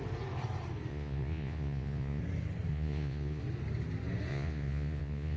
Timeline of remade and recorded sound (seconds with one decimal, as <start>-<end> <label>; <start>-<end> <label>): 0.0-0.9 recorded; 0.9-2.2 remade; 2.2-2.7 recorded; 2.7-3.4 remade; 3.4-4.3 recorded; 4.3-5.4 remade